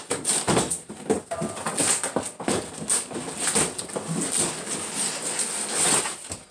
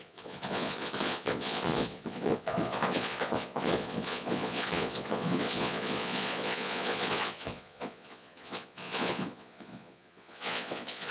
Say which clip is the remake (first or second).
second